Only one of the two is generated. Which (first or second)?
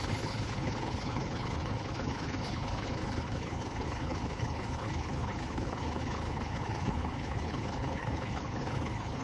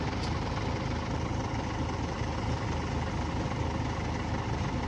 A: first